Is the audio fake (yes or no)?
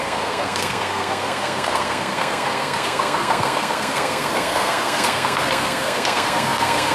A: yes